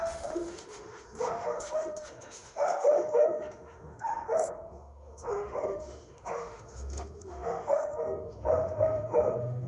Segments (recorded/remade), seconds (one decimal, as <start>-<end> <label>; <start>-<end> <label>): 0.0-9.7 remade